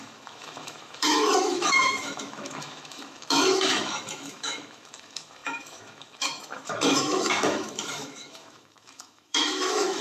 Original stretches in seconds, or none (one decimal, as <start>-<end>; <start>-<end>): none